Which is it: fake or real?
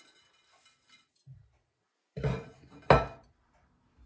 real